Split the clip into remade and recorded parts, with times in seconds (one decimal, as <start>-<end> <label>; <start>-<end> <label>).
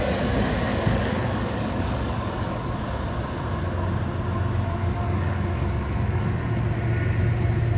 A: 0.0-0.7 recorded; 0.7-2.8 remade; 2.8-4.8 recorded; 4.8-6.4 remade; 6.4-7.8 recorded